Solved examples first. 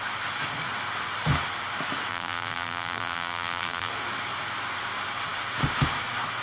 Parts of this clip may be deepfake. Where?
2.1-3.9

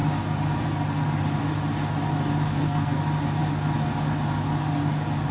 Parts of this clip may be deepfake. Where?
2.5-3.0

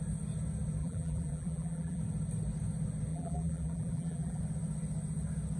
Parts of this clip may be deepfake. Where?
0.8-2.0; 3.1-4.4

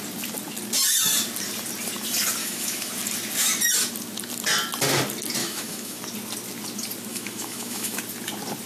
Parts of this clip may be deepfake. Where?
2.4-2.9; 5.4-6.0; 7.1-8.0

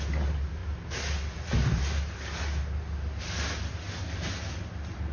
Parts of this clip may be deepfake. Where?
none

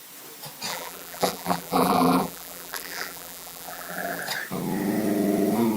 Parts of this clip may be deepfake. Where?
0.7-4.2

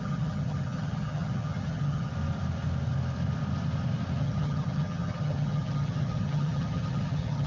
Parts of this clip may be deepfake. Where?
0.0-2.1; 4.2-7.5